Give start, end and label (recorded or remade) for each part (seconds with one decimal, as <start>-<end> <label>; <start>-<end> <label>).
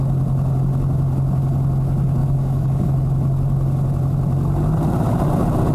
0.0-2.2 recorded; 2.2-2.9 remade; 2.9-5.7 recorded